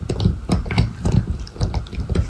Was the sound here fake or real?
real